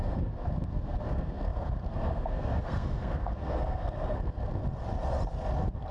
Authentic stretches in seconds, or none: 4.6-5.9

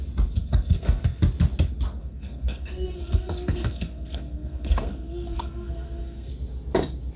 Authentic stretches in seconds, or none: 0.0-0.4; 1.2-2.0; 6.3-7.2

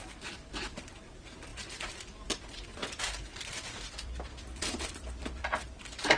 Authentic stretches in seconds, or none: 0.0-6.2

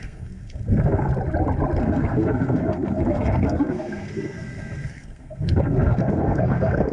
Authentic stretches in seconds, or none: 1.1-1.8

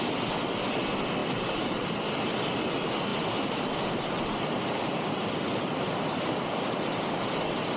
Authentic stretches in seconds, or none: 0.0-7.8

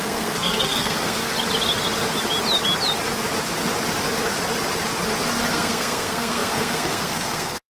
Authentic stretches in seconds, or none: 1.3-5.5

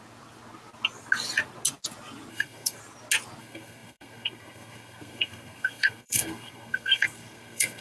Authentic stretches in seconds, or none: 0.0-2.3; 2.8-3.4

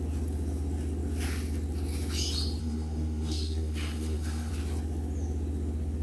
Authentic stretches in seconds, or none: 0.0-2.6; 4.5-6.0